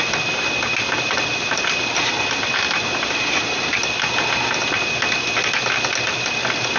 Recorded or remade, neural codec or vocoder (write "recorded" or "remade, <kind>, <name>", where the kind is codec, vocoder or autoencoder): recorded